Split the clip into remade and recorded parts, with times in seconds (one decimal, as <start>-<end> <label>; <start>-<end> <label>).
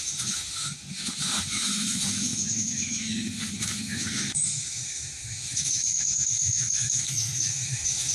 0.0-8.1 remade